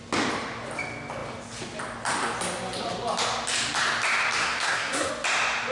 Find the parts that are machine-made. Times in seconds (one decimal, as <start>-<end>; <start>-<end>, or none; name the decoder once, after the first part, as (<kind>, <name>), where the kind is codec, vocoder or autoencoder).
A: 4.4-5.1 (codec, SNAC)